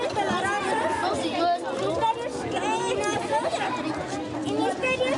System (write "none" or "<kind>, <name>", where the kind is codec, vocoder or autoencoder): none